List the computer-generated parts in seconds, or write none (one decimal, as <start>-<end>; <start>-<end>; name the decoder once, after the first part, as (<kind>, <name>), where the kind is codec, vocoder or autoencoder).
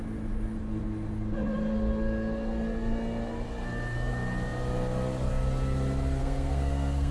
6.2-7.1 (codec, SNAC)